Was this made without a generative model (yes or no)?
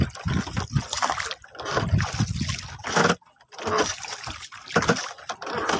yes